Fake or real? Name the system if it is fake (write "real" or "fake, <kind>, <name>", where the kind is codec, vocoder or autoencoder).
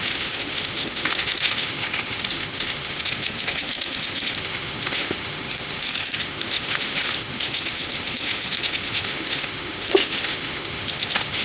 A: fake, autoencoder, DAC-VAE